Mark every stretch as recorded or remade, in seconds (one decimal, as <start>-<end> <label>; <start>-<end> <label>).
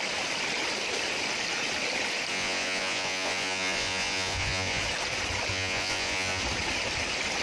0.0-2.3 recorded; 2.3-4.8 remade; 4.8-5.5 recorded; 5.5-6.4 remade; 6.4-7.4 recorded